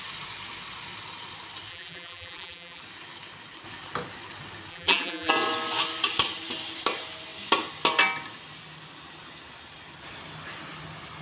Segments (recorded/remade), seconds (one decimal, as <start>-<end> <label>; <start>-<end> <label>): 0.0-1.7 recorded; 1.7-2.8 remade; 2.8-4.7 recorded; 4.7-5.3 remade; 5.3-11.2 recorded

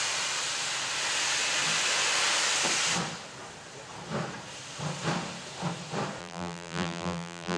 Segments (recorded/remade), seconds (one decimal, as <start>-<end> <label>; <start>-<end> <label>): 0.0-6.2 recorded; 6.2-7.6 remade

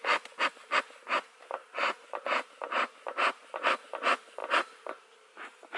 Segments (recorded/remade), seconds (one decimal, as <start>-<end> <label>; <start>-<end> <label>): 0.0-0.6 recorded; 0.6-3.9 remade; 3.9-5.8 recorded

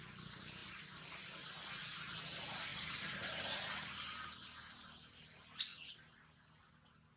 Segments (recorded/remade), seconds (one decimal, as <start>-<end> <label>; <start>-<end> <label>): 0.0-7.2 recorded

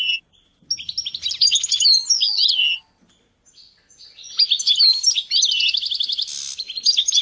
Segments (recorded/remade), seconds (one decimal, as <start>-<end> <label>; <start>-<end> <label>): 0.0-7.2 recorded

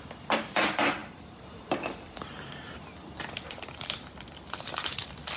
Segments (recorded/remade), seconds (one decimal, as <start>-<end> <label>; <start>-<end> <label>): 0.0-1.0 recorded; 1.0-4.2 remade; 4.2-5.4 recorded